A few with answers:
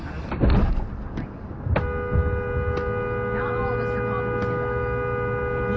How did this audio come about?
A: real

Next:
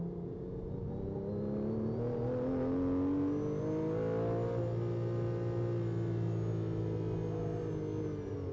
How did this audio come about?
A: real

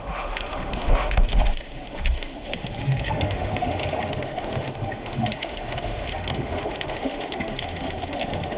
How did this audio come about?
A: fake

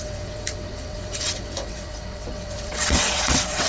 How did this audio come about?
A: fake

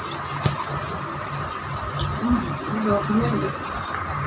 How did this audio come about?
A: real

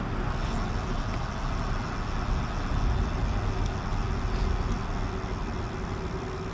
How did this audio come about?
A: real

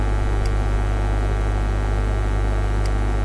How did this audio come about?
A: real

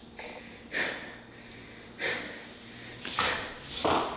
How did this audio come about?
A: real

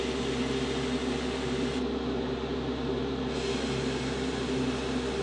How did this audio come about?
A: real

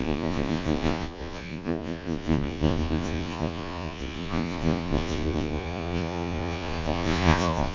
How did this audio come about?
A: fake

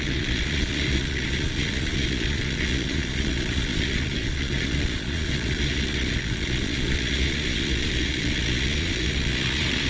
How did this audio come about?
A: fake